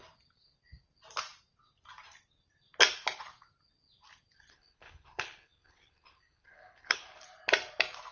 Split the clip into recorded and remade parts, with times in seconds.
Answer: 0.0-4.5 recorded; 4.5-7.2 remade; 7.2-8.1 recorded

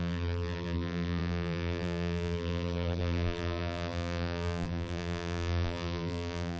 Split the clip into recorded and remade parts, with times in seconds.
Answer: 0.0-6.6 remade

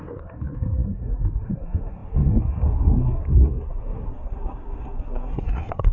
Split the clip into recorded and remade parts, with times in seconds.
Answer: 0.0-5.9 remade

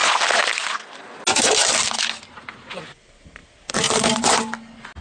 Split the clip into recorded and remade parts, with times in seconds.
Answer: 0.0-5.0 recorded